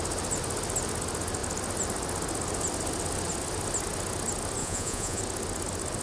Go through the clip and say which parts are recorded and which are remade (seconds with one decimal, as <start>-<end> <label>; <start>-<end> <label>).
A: 0.0-4.6 recorded; 4.6-5.2 remade; 5.2-6.0 recorded